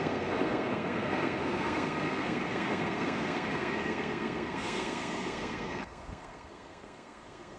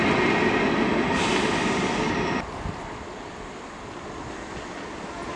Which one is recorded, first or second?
second